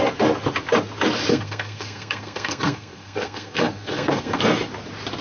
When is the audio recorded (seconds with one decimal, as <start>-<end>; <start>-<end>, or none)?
0.0-1.3; 4.4-5.2